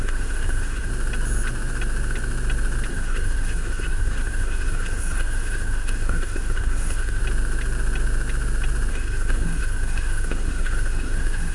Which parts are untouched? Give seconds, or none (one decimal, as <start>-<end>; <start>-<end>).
0.9-2.9; 7.2-8.9